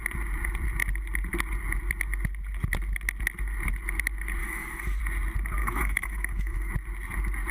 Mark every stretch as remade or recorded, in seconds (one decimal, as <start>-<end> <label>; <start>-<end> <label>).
0.0-4.4 recorded; 4.4-5.0 remade; 5.0-5.6 recorded; 5.6-6.7 remade; 6.7-7.5 recorded